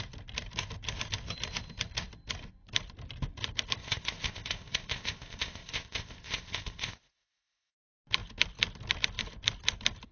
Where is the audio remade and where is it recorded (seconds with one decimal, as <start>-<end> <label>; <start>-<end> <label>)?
0.0-3.8 recorded; 3.8-7.7 remade; 7.7-10.1 recorded